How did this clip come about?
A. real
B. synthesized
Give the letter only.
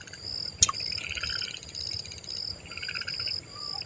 A